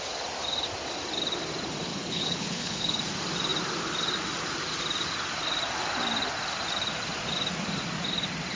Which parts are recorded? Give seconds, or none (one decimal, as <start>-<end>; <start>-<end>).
0.0-1.9; 3.0-8.6